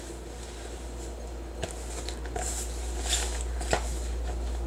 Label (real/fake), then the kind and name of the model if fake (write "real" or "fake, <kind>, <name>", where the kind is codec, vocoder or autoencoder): real